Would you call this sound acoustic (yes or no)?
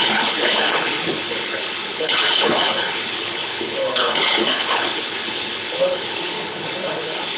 no